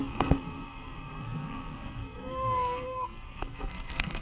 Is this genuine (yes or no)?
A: no